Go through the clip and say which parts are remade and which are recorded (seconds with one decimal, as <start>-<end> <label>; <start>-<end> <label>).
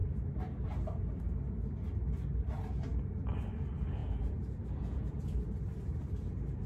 0.0-4.0 recorded; 4.0-5.2 remade; 5.2-6.7 recorded